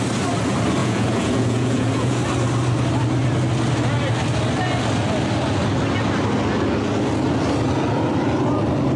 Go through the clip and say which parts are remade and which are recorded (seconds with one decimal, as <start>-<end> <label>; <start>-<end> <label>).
0.0-0.8 recorded; 0.8-2.2 remade; 2.2-9.0 recorded